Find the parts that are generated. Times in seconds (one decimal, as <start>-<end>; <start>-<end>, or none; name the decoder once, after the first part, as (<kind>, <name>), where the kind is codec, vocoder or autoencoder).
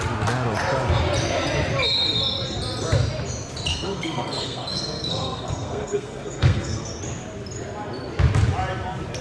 3.7-7.0 (codec, SNAC)